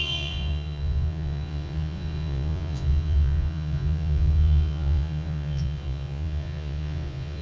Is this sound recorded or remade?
remade